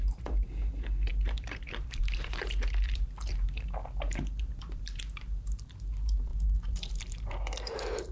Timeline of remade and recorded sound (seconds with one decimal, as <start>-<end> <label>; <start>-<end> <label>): 0.0-8.1 remade